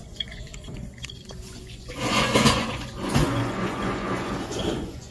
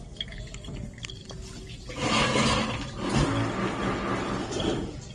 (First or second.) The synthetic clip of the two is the first